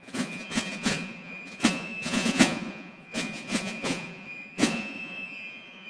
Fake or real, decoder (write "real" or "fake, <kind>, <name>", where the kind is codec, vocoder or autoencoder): fake, vocoder, Vocos